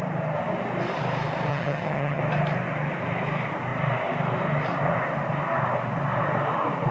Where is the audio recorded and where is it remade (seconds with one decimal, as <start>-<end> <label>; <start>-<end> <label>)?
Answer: 0.0-1.5 recorded; 1.5-2.2 remade; 2.2-6.9 recorded